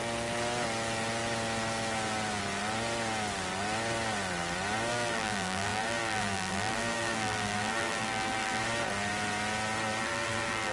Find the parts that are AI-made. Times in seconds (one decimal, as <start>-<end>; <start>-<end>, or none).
4.9-8.6; 10.0-10.7